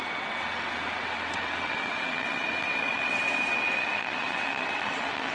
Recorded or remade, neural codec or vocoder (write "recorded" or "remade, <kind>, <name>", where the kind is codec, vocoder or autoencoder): remade, vocoder, WaveNeXt